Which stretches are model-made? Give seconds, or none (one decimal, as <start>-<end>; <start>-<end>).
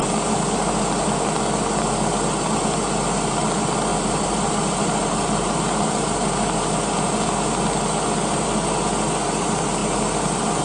3.9-6.3